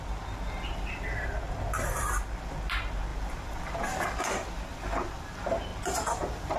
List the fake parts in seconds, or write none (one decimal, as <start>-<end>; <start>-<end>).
none